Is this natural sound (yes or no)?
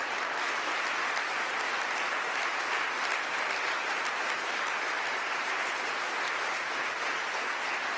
yes